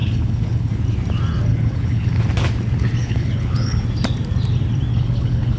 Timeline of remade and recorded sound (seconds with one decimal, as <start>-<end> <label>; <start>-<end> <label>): 0.0-0.7 remade; 0.7-1.5 recorded; 1.5-2.2 remade; 2.2-3.0 recorded; 3.0-3.8 remade; 3.8-4.9 recorded; 4.9-5.6 remade